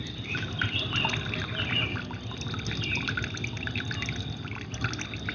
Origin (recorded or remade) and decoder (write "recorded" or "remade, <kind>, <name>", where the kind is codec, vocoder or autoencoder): recorded